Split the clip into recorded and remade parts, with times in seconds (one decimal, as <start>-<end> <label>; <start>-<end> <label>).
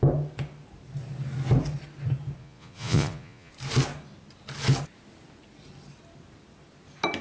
0.0-2.4 recorded; 2.4-3.5 remade; 3.5-7.2 recorded